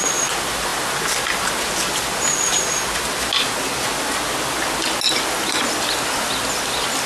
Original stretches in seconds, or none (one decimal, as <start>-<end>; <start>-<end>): 0.0-7.1